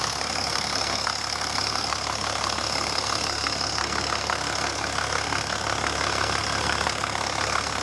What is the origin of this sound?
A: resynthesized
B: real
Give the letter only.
A